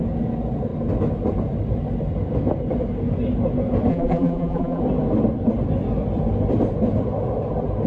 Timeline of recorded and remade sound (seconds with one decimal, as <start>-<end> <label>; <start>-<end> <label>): 0.0-3.9 recorded; 3.9-4.8 remade; 4.8-7.9 recorded